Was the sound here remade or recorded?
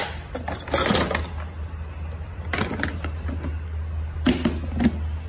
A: recorded